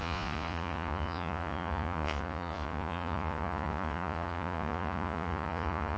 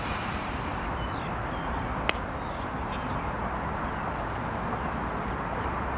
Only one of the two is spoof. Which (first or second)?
first